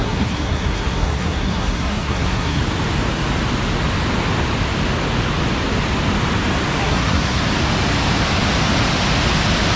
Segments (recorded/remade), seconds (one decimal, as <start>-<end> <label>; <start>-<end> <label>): 0.0-2.6 remade; 2.6-6.8 recorded; 6.8-7.4 remade; 7.4-9.8 recorded